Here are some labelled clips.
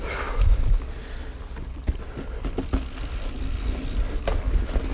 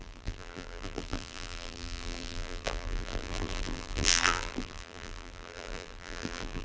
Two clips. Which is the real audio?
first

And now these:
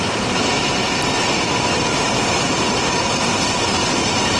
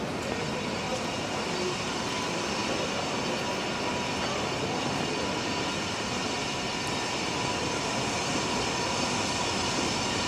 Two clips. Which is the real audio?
second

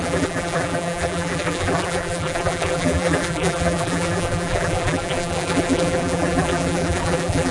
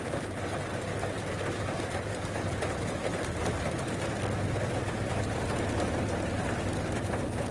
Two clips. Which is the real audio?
second